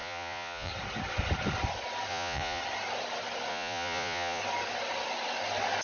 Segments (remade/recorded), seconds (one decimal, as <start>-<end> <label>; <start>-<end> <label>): 0.0-0.7 remade; 0.7-2.1 recorded; 2.1-2.6 remade; 2.6-3.5 recorded; 3.5-4.4 remade; 4.4-5.8 recorded